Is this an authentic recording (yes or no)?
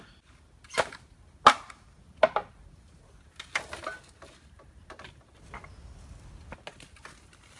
yes